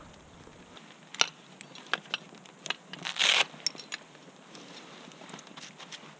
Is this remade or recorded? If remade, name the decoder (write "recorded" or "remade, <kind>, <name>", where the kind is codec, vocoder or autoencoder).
recorded